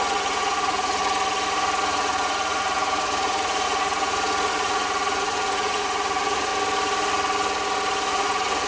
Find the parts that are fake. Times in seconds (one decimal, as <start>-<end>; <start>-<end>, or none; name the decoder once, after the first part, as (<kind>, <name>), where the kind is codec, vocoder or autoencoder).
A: 0.0-1.0 (vocoder, Vocos); 1.8-6.5; 8.1-8.7